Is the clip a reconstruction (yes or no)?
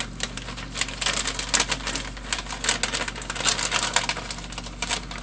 no